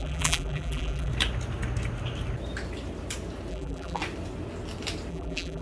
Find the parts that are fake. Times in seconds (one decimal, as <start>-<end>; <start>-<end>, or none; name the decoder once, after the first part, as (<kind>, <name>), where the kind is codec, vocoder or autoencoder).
0.0-1.1 (vocoder, BigVGAN v2); 3.5-4.0; 5.1-5.6